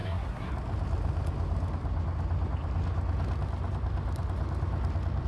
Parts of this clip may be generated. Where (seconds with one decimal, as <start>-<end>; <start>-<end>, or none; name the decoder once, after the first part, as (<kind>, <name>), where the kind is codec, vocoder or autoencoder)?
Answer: 0.0-0.5 (codec, SNAC)